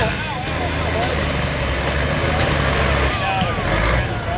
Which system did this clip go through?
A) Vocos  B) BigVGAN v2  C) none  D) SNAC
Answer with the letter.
C